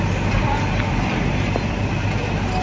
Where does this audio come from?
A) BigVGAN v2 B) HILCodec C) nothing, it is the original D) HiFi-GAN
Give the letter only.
C